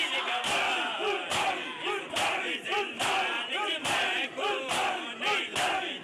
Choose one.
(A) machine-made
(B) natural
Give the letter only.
B